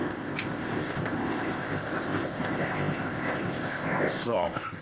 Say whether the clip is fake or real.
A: fake